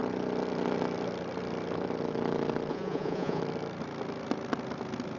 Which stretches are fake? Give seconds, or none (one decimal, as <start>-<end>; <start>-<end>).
2.7-3.4